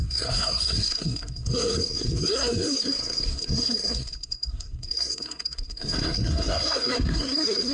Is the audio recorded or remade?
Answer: remade